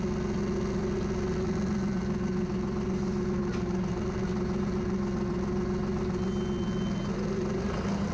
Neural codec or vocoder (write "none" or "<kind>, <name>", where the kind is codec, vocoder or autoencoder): none